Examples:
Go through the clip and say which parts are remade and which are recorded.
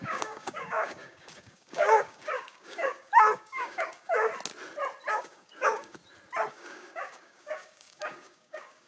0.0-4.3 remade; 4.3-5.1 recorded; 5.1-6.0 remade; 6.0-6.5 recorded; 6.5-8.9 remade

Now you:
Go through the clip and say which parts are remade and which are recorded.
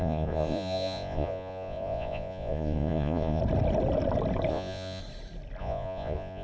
0.0-3.4 remade; 3.4-4.5 recorded; 4.5-5.0 remade; 5.0-5.6 recorded; 5.6-6.4 remade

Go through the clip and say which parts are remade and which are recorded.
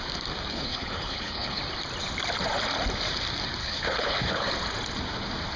0.0-0.5 recorded; 0.5-1.6 remade; 1.6-3.6 recorded; 3.6-4.5 remade; 4.5-5.6 recorded